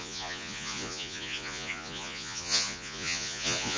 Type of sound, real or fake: fake